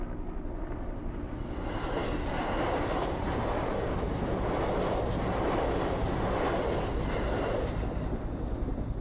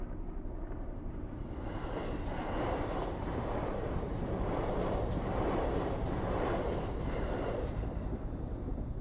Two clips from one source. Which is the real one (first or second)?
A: first